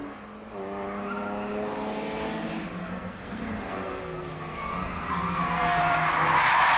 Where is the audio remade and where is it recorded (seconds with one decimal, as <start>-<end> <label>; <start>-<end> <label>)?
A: 0.0-2.8 recorded; 2.8-5.8 remade; 5.8-6.8 recorded